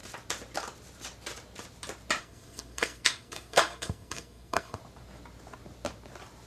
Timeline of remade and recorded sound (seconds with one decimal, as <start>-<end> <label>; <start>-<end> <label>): 0.0-2.2 recorded; 2.2-4.8 remade; 4.8-6.5 recorded